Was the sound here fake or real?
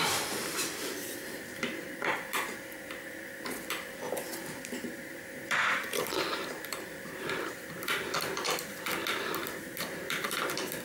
fake